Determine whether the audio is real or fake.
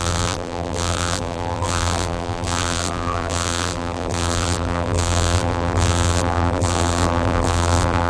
fake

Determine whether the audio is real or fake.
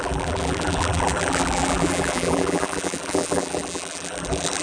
fake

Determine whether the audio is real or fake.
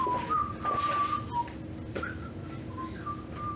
real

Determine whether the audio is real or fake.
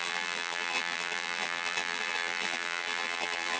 fake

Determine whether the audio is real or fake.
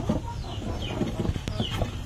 real